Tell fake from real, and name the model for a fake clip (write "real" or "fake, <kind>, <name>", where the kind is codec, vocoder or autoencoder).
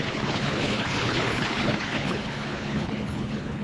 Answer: fake, codec, HILCodec